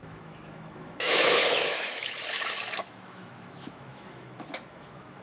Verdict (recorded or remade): remade